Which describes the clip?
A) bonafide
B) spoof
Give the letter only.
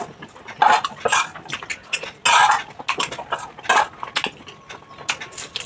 A